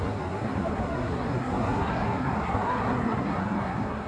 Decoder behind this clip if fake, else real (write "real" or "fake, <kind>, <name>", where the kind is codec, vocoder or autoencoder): fake, codec, SNAC